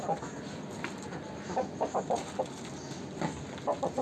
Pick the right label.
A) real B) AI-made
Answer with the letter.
A